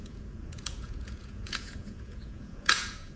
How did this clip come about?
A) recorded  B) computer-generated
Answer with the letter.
B